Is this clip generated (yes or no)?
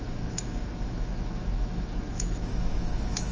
yes